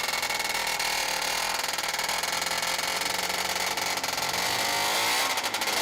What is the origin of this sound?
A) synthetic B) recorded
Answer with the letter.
B